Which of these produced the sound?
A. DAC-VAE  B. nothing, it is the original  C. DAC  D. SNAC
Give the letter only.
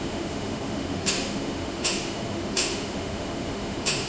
A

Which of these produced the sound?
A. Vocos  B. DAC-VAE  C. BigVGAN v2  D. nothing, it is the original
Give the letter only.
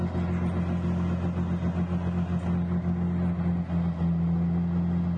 D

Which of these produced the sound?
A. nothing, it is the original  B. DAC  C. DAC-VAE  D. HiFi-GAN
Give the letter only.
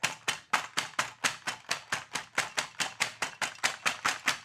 A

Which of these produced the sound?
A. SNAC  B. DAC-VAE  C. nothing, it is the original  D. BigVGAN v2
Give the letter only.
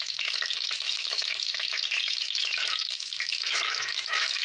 B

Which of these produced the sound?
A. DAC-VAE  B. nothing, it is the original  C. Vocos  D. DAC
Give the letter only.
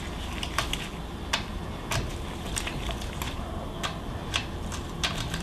B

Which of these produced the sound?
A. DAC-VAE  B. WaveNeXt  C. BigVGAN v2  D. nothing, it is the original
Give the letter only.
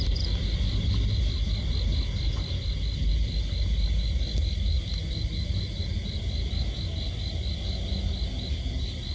D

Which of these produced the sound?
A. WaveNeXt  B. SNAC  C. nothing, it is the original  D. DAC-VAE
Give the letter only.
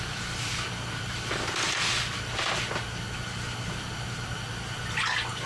C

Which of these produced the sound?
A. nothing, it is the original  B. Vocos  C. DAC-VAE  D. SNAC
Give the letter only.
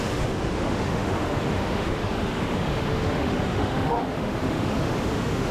C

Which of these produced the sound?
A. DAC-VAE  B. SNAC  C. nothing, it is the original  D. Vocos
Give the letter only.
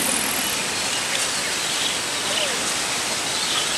C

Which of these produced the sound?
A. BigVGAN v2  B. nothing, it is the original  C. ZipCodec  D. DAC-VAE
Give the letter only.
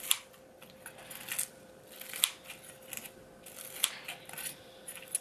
B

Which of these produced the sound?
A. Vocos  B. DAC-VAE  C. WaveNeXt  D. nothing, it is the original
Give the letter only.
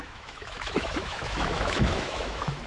B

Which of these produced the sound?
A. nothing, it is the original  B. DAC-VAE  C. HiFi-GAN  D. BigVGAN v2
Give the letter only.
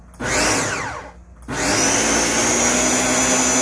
A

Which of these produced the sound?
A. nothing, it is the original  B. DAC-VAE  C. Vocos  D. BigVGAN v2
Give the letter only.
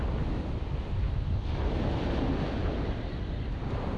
A